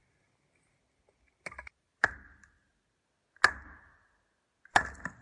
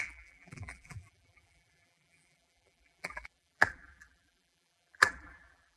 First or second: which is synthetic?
second